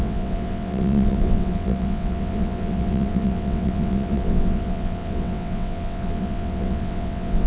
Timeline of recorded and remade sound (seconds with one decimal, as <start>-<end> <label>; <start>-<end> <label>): 0.0-7.5 remade